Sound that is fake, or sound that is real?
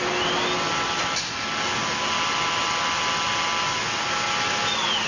real